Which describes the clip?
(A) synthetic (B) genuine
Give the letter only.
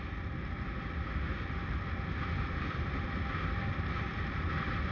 B